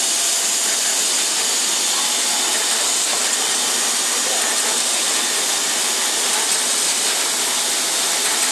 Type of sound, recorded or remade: remade